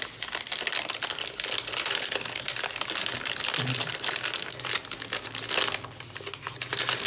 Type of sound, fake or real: real